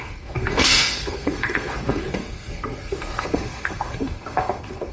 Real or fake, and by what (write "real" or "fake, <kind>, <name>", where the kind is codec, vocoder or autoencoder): fake, codec, SNAC